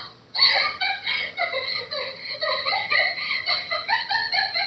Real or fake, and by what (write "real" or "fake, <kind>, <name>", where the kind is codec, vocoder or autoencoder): fake, vocoder, HiFi-GAN